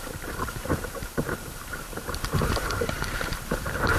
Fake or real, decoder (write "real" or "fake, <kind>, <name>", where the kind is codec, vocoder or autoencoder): fake, vocoder, BigVGAN v2